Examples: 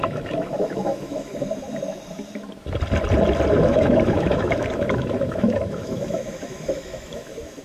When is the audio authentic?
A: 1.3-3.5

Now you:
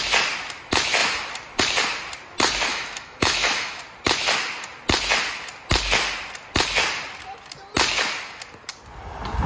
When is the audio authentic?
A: 0.0-2.7; 3.8-9.5

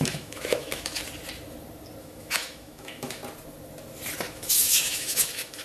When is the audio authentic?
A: 1.0-2.0; 3.2-4.3